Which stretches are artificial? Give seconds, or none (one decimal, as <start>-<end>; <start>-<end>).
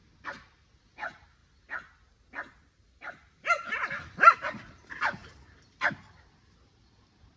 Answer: none